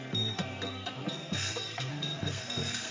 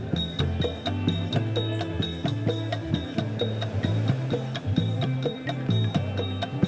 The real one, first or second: second